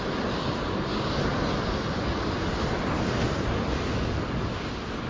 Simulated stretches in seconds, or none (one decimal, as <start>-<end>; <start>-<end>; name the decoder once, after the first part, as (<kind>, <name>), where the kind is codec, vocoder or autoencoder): none